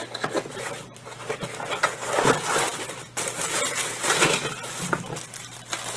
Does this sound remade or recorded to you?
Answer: remade